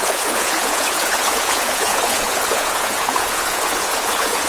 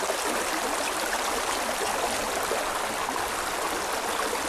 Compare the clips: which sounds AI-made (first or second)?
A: first